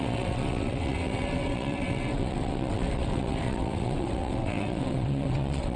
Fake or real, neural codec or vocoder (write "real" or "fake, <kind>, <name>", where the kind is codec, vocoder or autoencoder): fake, vocoder, WaveNeXt